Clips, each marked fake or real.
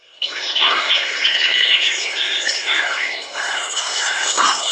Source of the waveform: fake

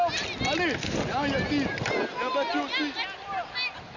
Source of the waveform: real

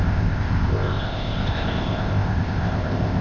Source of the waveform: fake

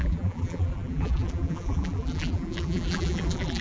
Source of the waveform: fake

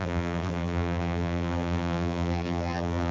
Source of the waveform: fake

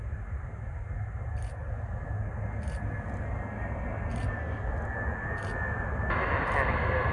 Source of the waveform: real